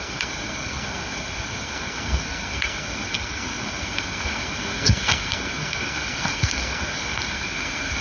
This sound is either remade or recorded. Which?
remade